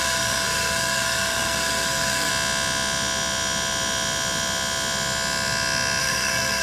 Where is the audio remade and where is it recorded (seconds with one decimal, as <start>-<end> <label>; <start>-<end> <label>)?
0.0-2.3 remade; 2.3-6.0 recorded; 6.0-6.6 remade